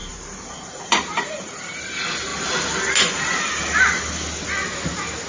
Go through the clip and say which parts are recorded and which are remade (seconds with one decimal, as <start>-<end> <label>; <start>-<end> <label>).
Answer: 0.0-1.6 remade; 1.6-5.3 recorded